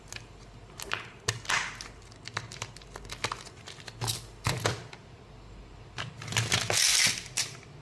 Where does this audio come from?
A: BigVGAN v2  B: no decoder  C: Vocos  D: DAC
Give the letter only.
B